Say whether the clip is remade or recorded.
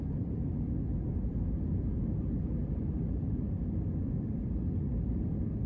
remade